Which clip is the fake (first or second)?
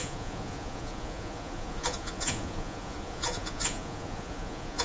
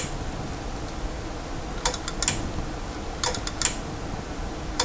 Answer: first